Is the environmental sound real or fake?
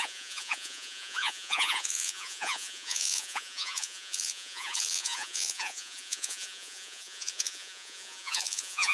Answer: fake